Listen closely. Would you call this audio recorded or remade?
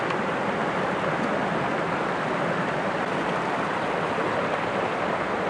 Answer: recorded